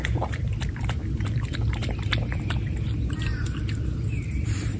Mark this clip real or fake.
fake